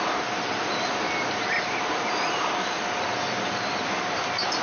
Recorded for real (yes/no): yes